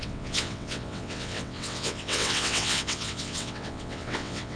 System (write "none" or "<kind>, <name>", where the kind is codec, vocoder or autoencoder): vocoder, WaveNeXt